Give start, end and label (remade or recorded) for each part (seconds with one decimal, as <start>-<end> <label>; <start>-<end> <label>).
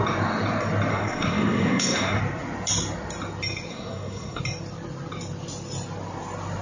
0.0-0.9 recorded; 0.9-2.2 remade; 2.2-3.7 recorded; 3.7-4.4 remade; 4.4-6.6 recorded